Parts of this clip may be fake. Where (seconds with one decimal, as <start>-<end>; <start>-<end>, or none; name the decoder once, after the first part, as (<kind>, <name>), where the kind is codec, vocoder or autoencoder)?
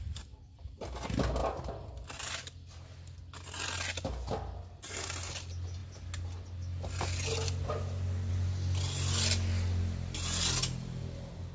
none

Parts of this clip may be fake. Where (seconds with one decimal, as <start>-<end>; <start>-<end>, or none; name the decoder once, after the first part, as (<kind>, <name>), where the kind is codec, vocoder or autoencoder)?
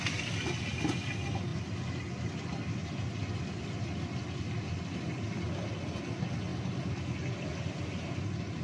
none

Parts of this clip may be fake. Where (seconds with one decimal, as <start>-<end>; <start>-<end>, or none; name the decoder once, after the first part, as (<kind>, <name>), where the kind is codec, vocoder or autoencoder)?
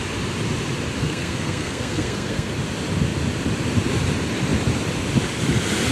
1.0-2.5 (codec, SNAC)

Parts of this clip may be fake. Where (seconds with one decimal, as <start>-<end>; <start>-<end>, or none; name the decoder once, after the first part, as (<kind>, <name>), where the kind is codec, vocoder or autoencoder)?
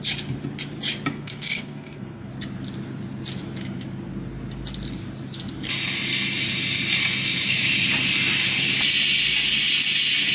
1.1-2.3 (codec, SNAC)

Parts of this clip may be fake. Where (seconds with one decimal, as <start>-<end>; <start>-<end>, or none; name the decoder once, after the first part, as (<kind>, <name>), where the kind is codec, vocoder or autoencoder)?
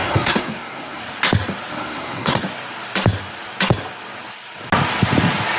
0.0-1.0 (codec, SNAC); 1.7-2.4